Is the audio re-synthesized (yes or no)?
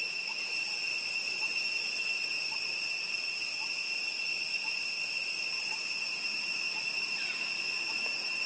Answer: yes